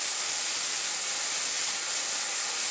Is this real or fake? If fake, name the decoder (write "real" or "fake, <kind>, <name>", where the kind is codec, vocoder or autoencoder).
real